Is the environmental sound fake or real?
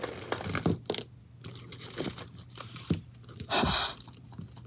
real